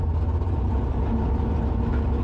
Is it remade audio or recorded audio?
recorded